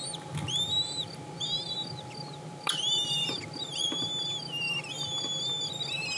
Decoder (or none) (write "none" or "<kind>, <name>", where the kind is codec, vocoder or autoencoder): none